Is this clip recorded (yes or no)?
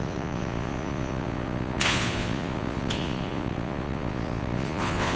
no